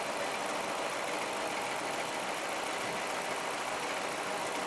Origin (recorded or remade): recorded